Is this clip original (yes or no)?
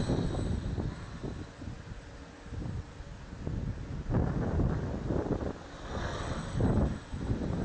yes